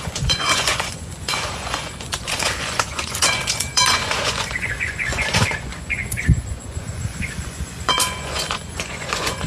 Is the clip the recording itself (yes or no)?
no